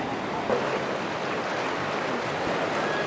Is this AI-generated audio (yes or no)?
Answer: no